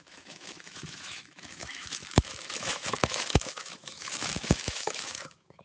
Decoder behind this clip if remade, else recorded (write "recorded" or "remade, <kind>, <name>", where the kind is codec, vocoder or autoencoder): remade, autoencoder, DAC-VAE